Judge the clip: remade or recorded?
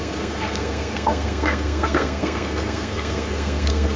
remade